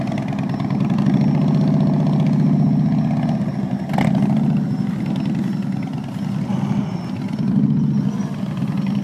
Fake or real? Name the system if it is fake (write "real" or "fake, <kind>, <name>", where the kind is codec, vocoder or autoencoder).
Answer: real